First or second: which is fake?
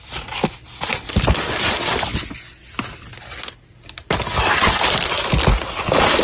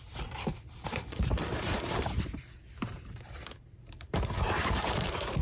second